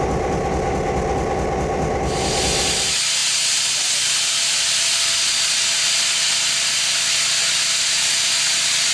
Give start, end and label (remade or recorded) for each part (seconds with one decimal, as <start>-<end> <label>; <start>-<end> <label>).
0.0-8.9 recorded